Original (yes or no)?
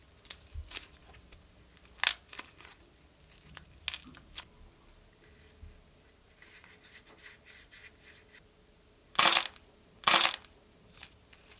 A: yes